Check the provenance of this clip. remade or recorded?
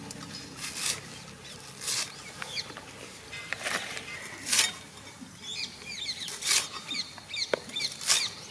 remade